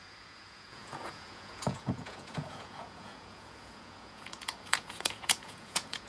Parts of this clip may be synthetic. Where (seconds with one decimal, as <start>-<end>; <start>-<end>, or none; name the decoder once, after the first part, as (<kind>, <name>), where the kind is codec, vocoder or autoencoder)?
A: 0.0-6.1 (vocoder, Vocos)